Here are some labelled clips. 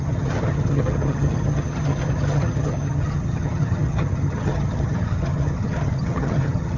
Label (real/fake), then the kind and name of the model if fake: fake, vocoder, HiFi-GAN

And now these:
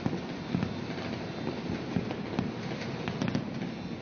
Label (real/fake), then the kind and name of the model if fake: real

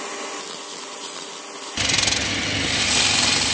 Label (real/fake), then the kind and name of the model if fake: real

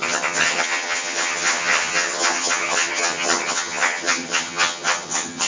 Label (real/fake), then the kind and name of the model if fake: fake, vocoder, HiFi-GAN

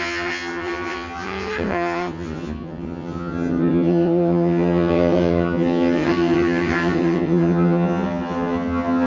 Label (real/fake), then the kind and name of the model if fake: fake, vocoder, HiFi-GAN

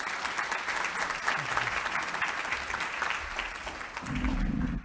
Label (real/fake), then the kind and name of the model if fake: real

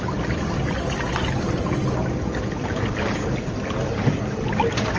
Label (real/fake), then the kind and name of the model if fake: real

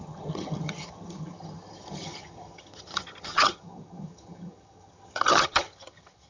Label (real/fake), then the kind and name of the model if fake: fake, vocoder, HiFi-GAN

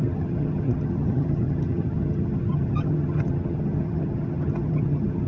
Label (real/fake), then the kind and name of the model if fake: fake, vocoder, HiFi-GAN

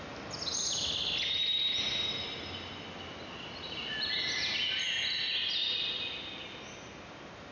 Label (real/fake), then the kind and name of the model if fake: real